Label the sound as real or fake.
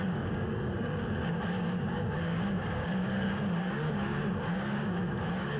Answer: fake